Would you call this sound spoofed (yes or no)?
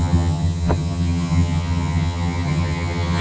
yes